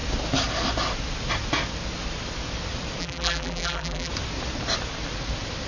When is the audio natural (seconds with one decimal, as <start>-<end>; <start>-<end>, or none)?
0.0-3.0; 4.1-5.7